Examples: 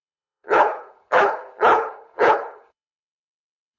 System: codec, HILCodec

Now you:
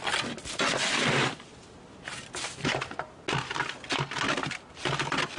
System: none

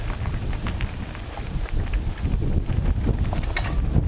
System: none